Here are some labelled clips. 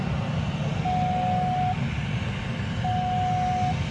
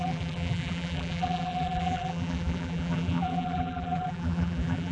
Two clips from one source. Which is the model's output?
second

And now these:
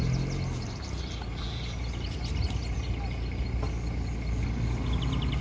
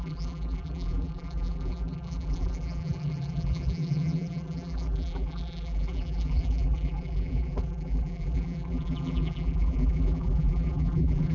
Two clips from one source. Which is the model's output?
second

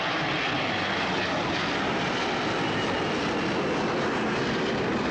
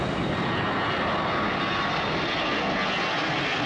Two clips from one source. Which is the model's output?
first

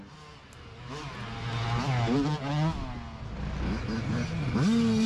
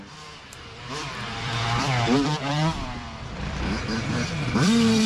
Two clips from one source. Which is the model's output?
second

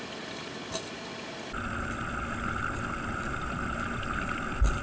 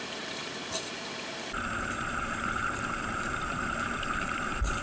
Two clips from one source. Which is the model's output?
second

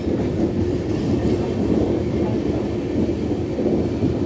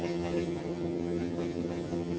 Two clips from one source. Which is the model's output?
second